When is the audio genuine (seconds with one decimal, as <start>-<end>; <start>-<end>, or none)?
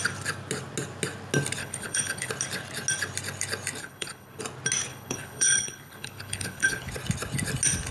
0.0-1.6; 2.3-3.8; 4.4-4.9; 6.9-7.9